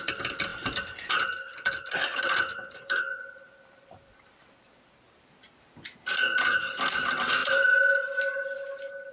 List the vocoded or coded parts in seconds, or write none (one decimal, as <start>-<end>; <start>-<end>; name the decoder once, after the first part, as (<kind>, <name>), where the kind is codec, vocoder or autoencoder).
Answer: 0.5-5.3 (vocoder, BigVGAN v2)